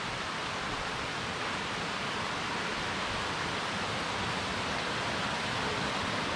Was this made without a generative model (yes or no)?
yes